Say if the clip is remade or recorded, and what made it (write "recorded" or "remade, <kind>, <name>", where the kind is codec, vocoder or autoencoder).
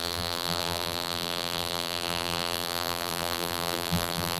remade, vocoder, BigVGAN v2